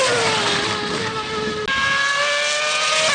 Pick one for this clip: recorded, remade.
recorded